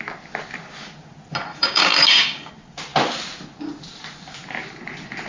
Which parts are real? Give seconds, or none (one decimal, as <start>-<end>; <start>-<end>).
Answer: 0.0-1.5; 2.5-5.3